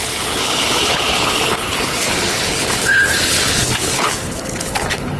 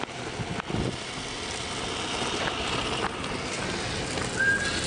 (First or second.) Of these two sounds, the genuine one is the second